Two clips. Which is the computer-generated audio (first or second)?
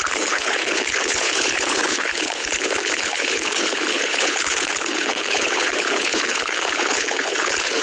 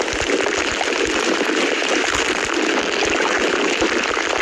first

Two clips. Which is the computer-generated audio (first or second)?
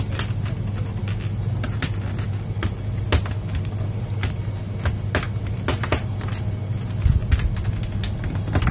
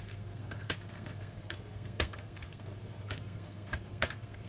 second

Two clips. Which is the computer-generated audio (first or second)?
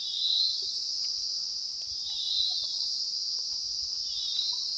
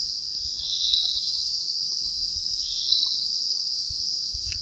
second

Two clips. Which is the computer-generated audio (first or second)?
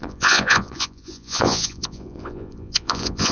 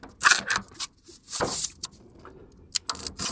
first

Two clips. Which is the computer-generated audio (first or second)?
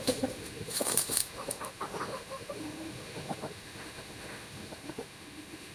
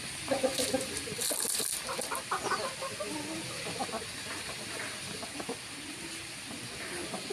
first